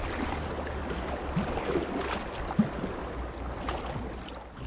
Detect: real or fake real